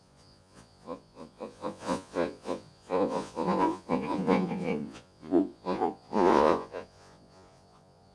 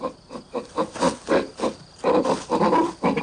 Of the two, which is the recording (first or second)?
second